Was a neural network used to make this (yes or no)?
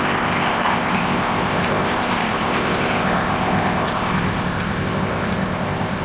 yes